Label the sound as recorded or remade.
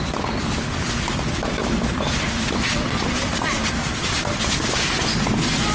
recorded